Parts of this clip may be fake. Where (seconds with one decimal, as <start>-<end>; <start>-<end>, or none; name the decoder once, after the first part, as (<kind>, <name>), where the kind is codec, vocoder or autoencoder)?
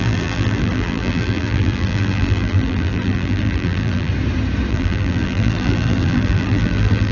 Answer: 0.0-4.1 (vocoder, BigVGAN v2); 4.7-7.1